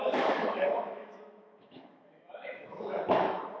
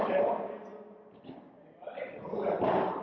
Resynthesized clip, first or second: first